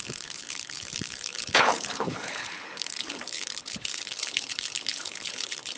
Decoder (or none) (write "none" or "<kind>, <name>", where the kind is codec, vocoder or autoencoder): codec, HILCodec